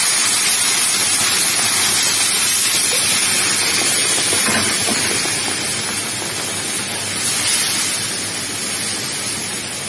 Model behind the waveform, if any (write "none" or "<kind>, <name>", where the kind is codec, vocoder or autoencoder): none